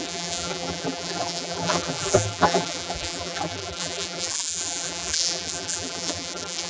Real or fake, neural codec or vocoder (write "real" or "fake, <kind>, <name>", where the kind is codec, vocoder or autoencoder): fake, vocoder, BigVGAN v2